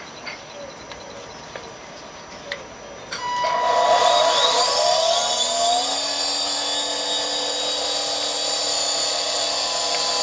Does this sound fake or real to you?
real